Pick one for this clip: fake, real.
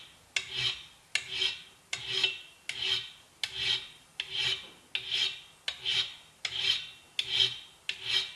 real